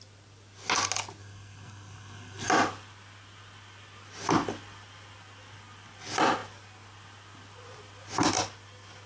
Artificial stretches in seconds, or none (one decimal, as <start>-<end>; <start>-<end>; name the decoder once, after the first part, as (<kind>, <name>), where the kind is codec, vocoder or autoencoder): 1.2-2.5 (codec, SNAC)